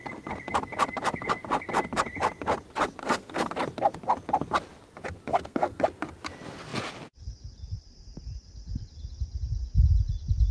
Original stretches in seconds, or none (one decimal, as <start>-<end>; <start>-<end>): 0.0-3.0; 3.5-5.3; 5.8-10.5